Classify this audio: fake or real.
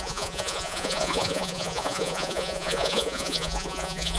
fake